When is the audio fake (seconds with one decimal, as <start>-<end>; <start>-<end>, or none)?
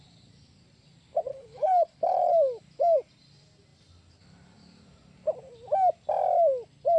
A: 1.3-2.3